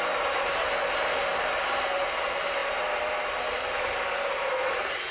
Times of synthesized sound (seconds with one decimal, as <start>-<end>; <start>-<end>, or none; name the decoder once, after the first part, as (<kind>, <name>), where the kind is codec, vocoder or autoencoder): none